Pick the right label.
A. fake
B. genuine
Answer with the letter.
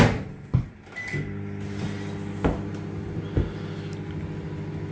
B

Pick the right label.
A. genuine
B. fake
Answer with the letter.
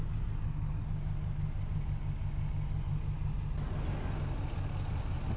A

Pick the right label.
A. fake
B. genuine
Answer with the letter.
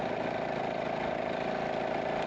B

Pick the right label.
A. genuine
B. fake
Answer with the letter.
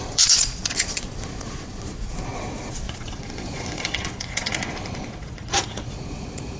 B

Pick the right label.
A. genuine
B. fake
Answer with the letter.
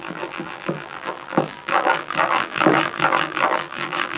B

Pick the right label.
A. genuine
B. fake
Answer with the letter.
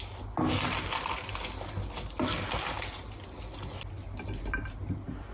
A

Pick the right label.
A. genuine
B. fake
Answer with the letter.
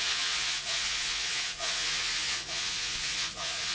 B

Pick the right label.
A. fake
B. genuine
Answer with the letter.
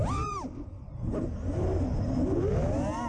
B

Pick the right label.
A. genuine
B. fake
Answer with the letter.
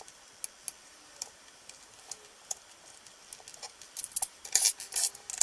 A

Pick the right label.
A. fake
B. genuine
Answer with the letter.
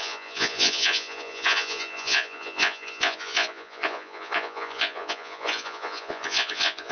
A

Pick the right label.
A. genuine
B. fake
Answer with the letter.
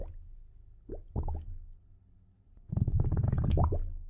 A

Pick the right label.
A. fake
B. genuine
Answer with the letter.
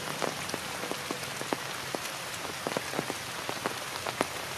B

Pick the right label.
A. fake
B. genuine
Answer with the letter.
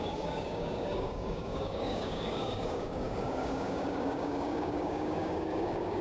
A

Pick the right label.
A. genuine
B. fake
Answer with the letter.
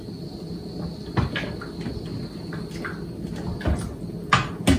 A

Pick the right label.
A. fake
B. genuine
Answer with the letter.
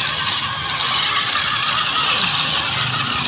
B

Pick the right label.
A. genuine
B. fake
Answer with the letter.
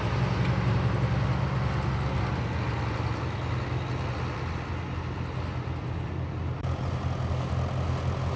A